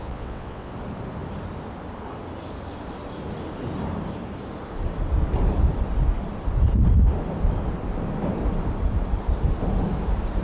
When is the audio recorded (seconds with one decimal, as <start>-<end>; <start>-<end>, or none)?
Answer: 0.7-10.4